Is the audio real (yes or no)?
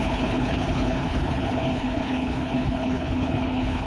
no